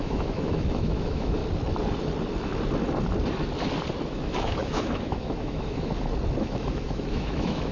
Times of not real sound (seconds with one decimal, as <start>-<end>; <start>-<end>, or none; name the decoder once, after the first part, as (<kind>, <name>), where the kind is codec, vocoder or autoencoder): 0.0-1.4 (autoencoder, DAC-VAE); 4.1-5.9; 6.4-7.7